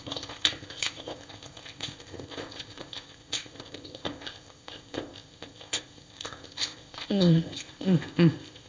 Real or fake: fake